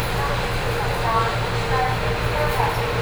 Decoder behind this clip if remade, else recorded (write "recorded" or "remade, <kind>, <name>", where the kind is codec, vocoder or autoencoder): recorded